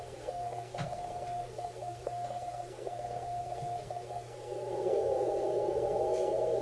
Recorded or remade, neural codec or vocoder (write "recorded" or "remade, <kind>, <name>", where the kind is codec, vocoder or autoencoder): remade, codec, SNAC